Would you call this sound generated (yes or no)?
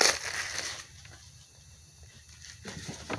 no